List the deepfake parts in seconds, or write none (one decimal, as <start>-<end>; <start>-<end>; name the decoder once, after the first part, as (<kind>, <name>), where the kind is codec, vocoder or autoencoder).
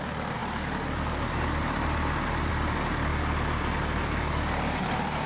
none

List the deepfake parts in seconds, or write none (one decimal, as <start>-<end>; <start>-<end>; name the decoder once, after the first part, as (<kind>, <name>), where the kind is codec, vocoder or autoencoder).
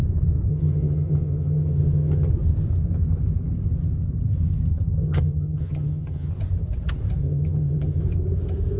0.5-2.3 (vocoder, HiFi-GAN); 5.0-6.3; 7.2-8.0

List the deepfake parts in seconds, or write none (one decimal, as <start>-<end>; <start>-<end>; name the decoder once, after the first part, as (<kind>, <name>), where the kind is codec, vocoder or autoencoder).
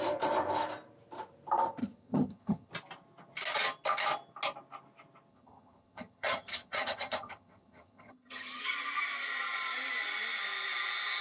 1.8-2.7 (vocoder, HiFi-GAN); 5.3-8.6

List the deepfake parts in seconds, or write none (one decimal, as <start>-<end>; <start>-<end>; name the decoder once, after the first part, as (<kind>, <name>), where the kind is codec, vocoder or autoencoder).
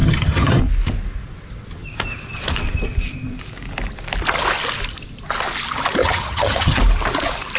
0.0-0.6 (vocoder, HiFi-GAN); 6.0-6.8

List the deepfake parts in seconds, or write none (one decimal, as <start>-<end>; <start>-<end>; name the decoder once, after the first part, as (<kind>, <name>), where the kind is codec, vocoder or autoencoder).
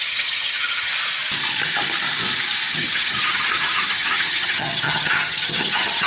0.0-0.9 (vocoder, HiFi-GAN); 2.7-6.1